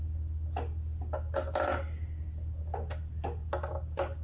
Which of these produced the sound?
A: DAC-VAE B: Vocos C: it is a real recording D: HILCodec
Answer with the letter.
C